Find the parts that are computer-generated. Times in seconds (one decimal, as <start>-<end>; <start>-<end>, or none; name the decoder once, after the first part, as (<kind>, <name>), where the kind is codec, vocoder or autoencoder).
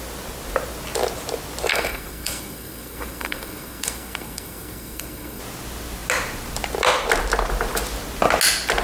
1.7-5.4 (codec, SNAC)